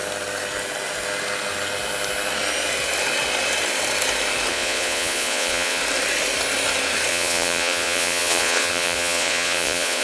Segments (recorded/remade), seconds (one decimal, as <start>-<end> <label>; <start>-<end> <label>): 0.0-4.5 recorded; 4.5-5.8 remade; 5.8-7.1 recorded; 7.1-10.0 remade